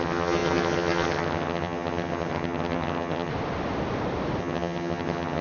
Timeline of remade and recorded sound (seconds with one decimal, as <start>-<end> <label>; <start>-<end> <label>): 0.0-3.3 remade; 3.3-4.4 recorded; 4.4-5.4 remade

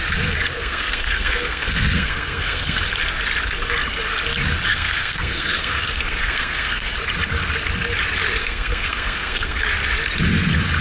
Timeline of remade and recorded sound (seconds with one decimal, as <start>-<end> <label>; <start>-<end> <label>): 0.0-0.5 recorded; 0.5-2.8 remade; 2.8-4.7 recorded; 4.7-6.9 remade; 6.9-8.4 recorded; 8.4-9.6 remade; 9.6-10.8 recorded

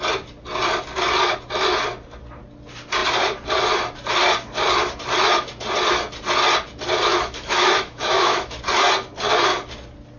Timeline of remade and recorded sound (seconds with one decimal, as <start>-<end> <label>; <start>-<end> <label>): 0.0-7.1 recorded; 7.1-8.6 remade; 8.6-10.2 recorded

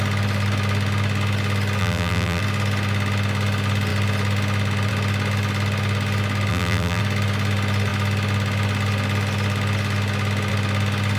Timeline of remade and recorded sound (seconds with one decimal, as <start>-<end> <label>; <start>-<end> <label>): 0.0-1.8 recorded; 1.8-2.4 remade; 2.4-6.5 recorded; 6.5-7.0 remade; 7.0-11.2 recorded

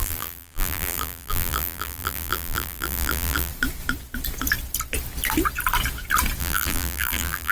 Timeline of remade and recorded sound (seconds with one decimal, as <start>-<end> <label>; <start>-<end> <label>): 0.0-3.5 remade; 3.5-6.4 recorded; 6.4-7.5 remade

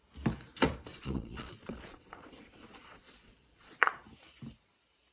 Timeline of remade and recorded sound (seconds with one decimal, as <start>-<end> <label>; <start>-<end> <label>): 0.0-0.9 recorded; 0.9-4.0 remade; 4.0-5.1 recorded